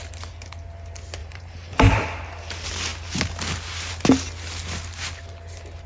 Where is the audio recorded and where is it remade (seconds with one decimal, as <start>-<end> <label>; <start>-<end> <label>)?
0.0-1.2 recorded; 1.2-1.9 remade; 1.9-5.9 recorded